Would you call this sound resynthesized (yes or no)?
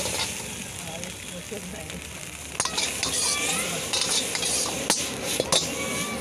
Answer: no